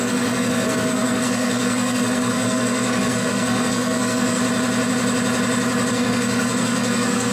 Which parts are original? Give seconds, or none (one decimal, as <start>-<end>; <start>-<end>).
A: 4.4-5.9